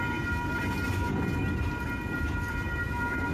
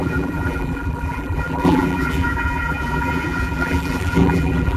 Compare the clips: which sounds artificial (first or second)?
second